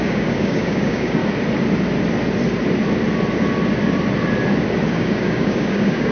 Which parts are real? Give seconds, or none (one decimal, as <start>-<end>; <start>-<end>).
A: 1.2-4.9